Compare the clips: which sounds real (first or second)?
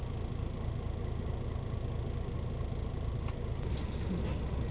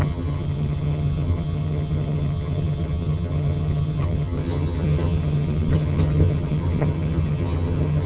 first